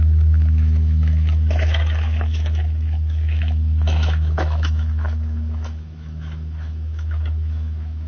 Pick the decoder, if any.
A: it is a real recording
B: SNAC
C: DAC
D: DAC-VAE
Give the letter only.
D